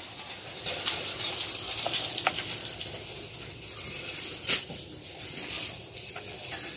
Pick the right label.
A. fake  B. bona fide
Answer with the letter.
B